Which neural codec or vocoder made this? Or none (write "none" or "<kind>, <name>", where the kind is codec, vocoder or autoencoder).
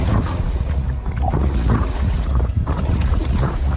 vocoder, Vocos